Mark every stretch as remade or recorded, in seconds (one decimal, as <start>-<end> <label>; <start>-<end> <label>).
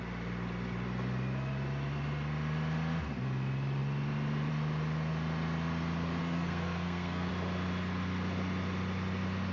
0.0-6.2 recorded; 6.2-7.3 remade; 7.3-9.5 recorded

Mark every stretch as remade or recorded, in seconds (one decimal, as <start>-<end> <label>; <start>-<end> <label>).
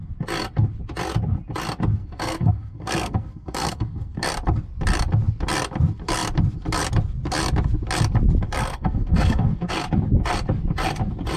0.0-2.0 recorded; 2.0-4.3 remade; 4.3-8.6 recorded; 8.6-9.7 remade; 9.7-11.4 recorded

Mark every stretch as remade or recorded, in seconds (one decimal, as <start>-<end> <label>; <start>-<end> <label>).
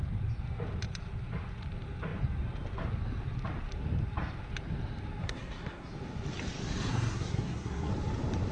0.0-5.2 recorded; 5.2-5.9 remade; 5.9-6.9 recorded; 6.9-7.9 remade; 7.9-8.5 recorded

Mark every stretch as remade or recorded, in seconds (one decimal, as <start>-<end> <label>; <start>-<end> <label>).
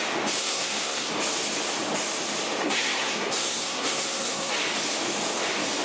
0.0-0.4 recorded; 0.4-1.1 remade; 1.1-2.6 recorded; 2.6-4.5 remade; 4.5-5.8 recorded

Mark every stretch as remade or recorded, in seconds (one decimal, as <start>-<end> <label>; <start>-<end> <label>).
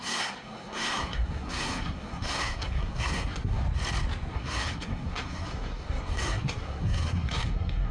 0.0-3.6 remade; 3.6-4.3 recorded; 4.3-7.9 remade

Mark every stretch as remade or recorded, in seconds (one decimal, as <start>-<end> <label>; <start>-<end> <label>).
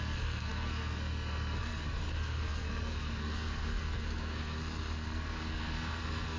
0.0-6.4 remade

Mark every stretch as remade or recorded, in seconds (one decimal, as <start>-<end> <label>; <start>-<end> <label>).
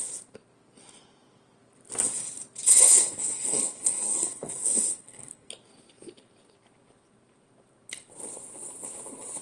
0.0-2.7 recorded; 2.7-5.5 remade; 5.5-9.4 recorded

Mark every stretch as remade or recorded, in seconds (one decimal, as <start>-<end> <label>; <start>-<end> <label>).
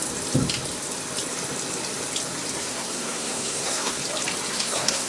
0.0-2.6 recorded; 2.6-4.0 remade; 4.0-4.5 recorded; 4.5-5.1 remade